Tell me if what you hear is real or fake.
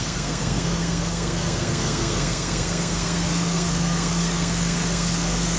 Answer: fake